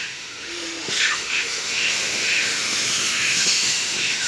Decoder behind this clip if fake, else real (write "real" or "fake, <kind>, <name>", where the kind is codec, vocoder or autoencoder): fake, autoencoder, DAC-VAE